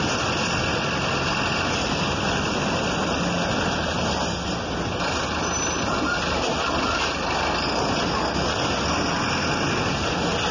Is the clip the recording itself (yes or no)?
yes